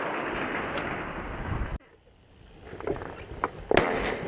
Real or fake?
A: real